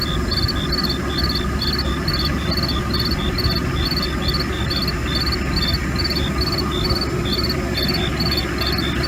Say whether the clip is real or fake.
real